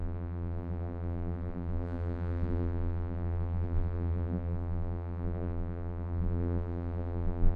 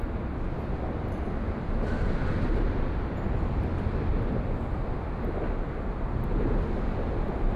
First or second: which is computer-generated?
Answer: first